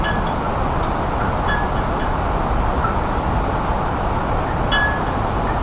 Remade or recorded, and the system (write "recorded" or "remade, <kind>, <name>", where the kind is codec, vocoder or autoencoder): recorded